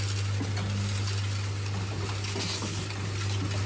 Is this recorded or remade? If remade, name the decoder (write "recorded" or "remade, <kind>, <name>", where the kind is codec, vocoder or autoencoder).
recorded